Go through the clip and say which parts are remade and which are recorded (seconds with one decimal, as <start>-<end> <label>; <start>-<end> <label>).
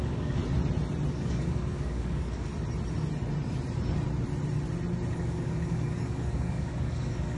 0.0-0.4 remade; 0.4-1.1 recorded; 1.1-2.5 remade; 2.5-5.1 recorded; 5.1-7.4 remade